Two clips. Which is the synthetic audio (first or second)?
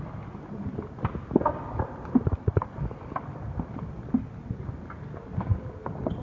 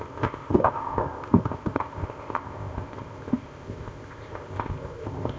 second